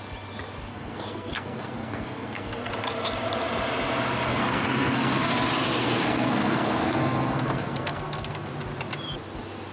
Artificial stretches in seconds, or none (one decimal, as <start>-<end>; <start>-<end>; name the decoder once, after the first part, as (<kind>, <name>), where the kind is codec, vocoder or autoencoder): 0.6-2.7 (codec, SNAC); 4.3-5.3; 5.8-8.5